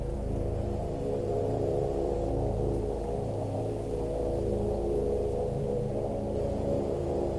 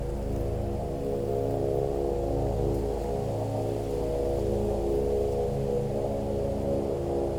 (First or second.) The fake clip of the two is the first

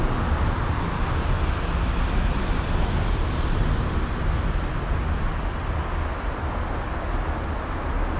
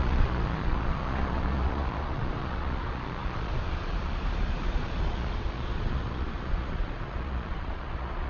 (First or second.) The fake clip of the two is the second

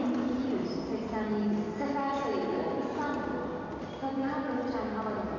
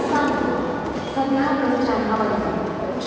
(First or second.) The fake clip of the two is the second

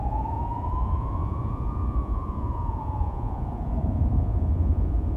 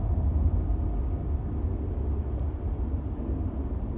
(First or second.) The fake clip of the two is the first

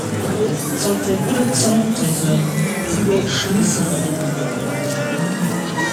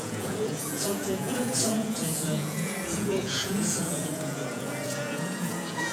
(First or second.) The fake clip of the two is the second